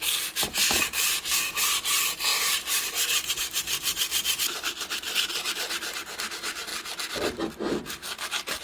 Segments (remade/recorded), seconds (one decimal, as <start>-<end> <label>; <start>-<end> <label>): 0.0-6.7 remade; 6.7-7.5 recorded; 7.5-8.6 remade